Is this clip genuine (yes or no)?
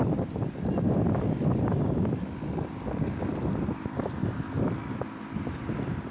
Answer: yes